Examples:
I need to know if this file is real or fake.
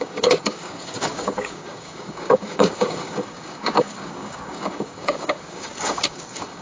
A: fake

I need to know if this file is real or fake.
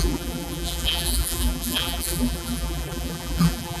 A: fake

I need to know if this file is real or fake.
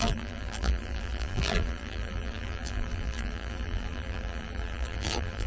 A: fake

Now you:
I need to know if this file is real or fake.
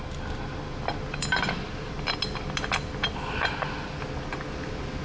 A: real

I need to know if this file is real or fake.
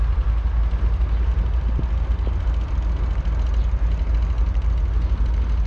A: real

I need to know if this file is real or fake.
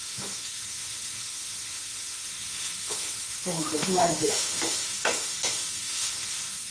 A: fake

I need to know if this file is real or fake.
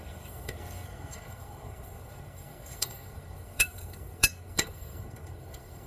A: fake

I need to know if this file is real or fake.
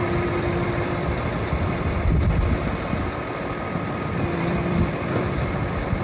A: fake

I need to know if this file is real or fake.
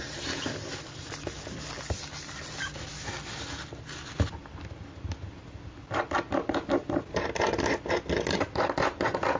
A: real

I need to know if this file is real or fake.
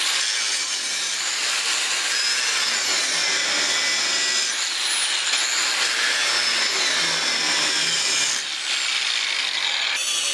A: real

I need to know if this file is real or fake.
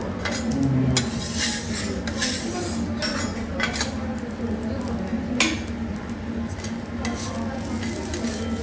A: real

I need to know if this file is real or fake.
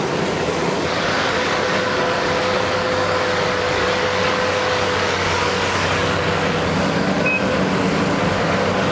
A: fake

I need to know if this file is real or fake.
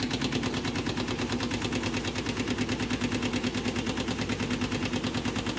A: real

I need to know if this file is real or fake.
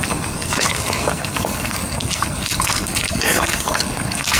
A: fake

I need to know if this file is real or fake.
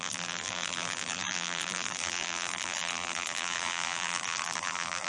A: fake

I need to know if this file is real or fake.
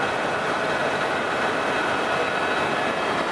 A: real